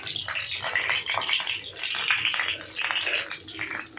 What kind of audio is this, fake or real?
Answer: real